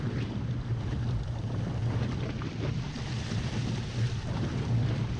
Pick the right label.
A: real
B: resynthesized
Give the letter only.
B